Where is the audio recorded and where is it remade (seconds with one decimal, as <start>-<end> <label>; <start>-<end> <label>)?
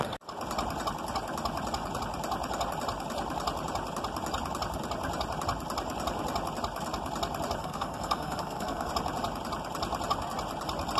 0.0-7.6 recorded; 7.6-8.9 remade; 8.9-11.0 recorded